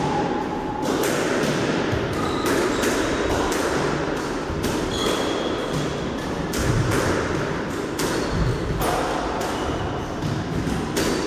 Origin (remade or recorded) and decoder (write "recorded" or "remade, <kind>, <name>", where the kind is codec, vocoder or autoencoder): recorded